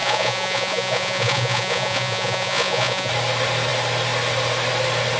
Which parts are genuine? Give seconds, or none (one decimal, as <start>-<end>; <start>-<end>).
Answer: 3.1-5.2